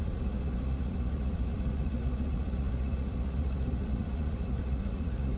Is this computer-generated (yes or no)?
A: yes